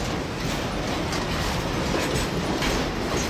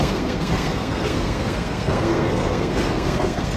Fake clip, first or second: second